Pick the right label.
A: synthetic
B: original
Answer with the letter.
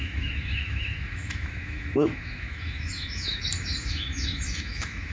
A